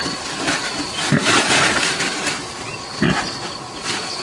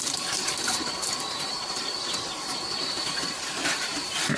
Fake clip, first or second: second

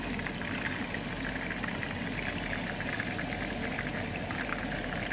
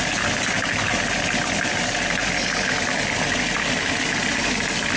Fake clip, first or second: first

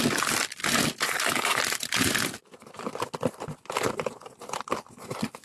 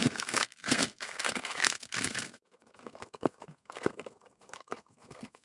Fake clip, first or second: second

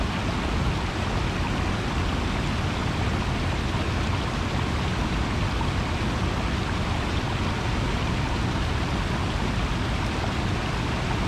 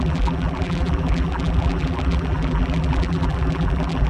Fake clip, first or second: second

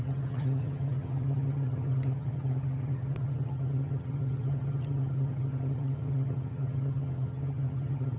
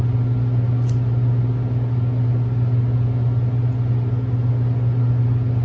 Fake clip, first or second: first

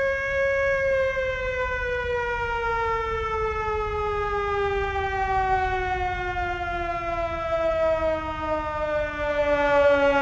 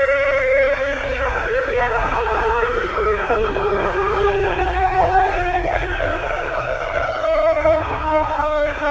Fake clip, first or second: second